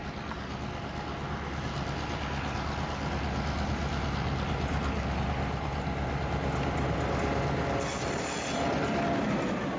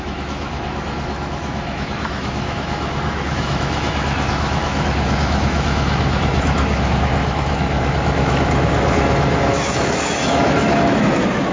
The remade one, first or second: second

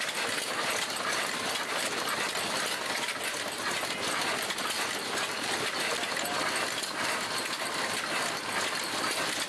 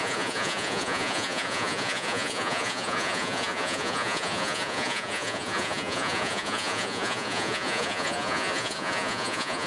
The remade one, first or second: second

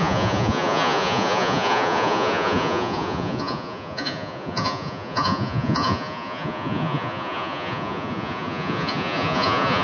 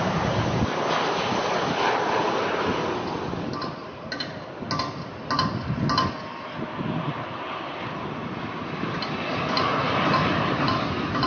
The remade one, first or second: first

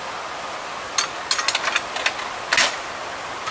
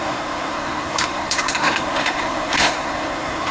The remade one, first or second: second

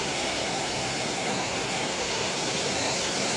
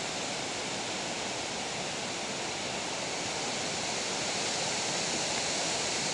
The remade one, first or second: first